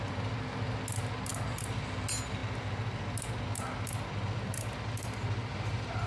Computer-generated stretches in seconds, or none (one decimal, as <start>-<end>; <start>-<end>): none